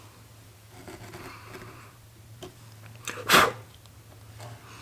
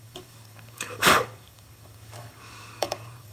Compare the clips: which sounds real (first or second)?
first